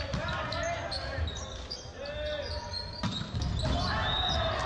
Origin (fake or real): real